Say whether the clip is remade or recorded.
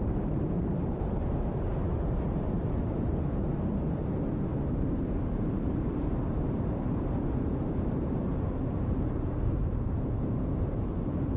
remade